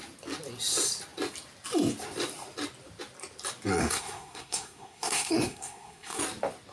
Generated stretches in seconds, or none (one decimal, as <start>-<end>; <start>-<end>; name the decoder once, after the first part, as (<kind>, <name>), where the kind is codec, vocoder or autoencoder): 3.8-6.2 (codec, SNAC)